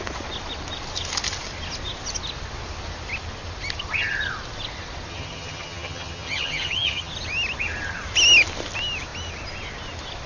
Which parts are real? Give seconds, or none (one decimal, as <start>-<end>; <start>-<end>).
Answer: 0.0-5.1; 7.1-10.3